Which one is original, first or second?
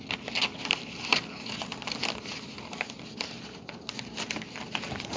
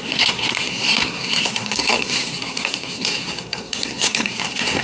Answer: first